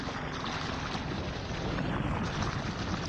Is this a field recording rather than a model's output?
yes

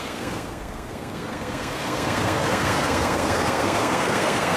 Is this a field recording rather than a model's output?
no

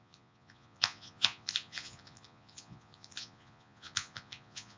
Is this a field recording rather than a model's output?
no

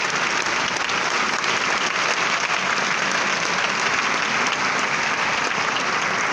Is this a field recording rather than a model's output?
yes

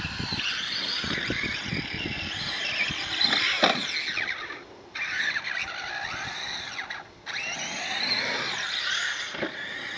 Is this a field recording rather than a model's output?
yes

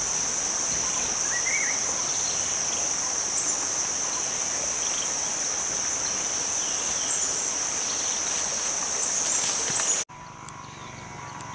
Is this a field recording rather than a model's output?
yes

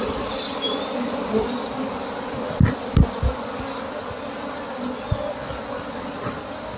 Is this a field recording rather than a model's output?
yes